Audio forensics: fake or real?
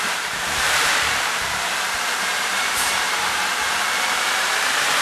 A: fake